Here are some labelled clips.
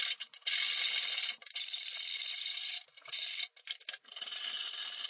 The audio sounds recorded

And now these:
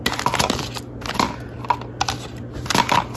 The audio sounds recorded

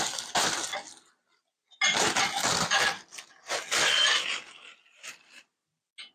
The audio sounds recorded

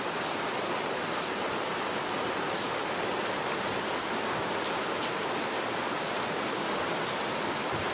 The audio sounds recorded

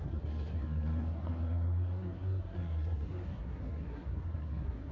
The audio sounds remade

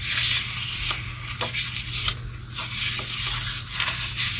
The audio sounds recorded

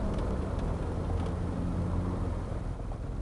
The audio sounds recorded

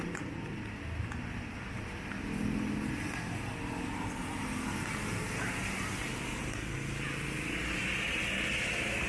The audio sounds recorded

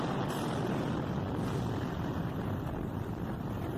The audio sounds recorded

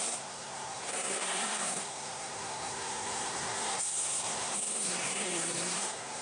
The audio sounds remade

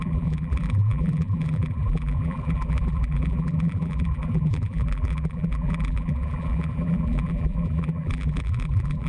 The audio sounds remade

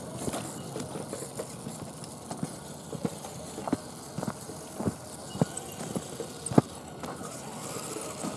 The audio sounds recorded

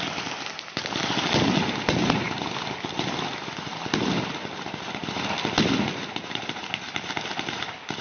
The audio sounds recorded